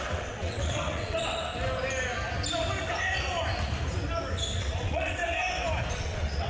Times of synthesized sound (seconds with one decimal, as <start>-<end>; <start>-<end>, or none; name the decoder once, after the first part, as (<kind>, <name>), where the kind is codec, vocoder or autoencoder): 0.0-1.5 (vocoder, WaveNeXt); 4.6-5.2; 5.9-6.5